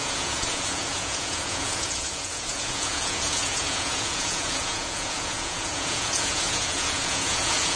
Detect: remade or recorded remade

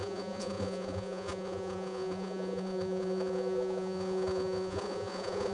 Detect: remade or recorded remade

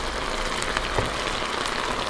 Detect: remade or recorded recorded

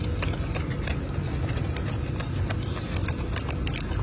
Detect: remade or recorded recorded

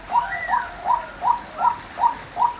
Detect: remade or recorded recorded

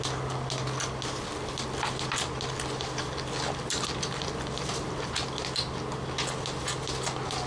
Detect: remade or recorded recorded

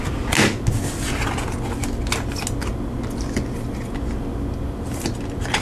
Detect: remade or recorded recorded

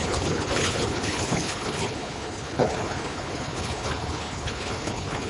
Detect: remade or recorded remade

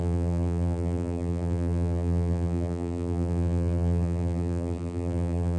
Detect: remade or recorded remade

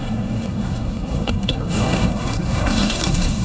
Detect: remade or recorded remade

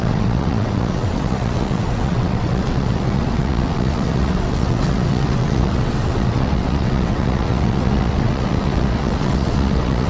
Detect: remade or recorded remade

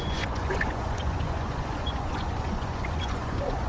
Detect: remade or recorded remade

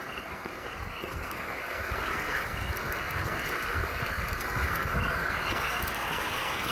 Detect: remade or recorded remade